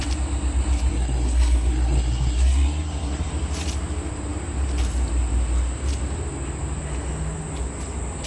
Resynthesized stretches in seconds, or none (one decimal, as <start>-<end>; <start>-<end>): 0.9-3.3

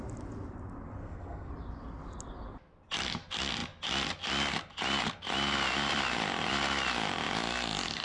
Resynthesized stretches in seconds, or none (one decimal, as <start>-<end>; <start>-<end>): 1.0-1.5

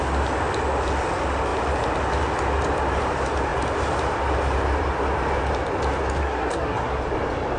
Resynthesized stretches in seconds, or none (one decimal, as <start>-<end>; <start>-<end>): 6.2-7.0